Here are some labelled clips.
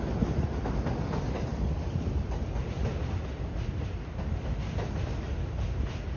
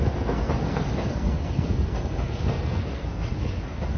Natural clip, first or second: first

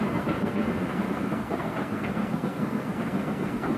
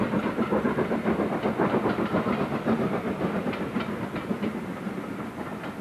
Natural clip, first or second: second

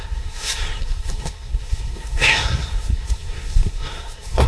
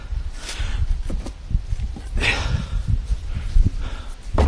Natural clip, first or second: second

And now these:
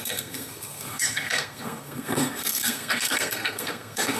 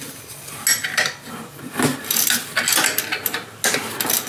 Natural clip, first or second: second